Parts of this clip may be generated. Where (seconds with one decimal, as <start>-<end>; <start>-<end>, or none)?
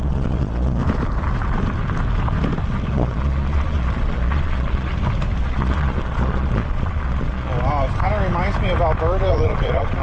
0.0-0.8; 2.9-4.9; 5.4-7.5; 9.3-10.0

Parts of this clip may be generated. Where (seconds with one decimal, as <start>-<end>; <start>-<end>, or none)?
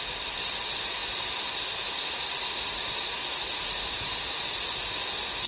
none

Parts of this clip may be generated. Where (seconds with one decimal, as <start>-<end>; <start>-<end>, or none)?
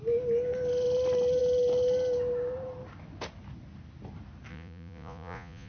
4.5-5.7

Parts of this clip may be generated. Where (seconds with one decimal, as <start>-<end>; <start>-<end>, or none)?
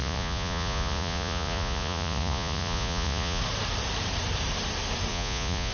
0.0-3.4; 5.1-5.7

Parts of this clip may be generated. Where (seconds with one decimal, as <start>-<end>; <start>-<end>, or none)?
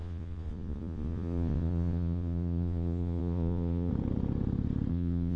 0.0-3.9; 4.9-5.4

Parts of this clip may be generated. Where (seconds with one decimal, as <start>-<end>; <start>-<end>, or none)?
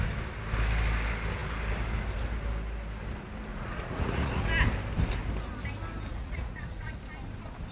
3.5-4.4; 6.1-7.0